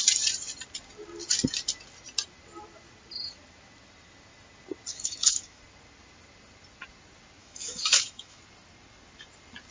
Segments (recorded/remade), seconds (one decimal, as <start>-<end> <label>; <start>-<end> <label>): 0.0-4.9 recorded; 4.9-5.6 remade; 5.6-7.4 recorded; 7.4-8.4 remade; 8.4-9.7 recorded